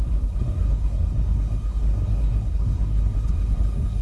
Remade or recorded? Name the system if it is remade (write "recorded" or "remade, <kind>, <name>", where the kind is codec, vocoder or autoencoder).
remade, codec, SNAC